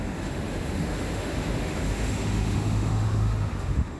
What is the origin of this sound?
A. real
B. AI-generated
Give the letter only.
B